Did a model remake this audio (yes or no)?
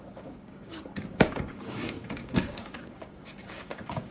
yes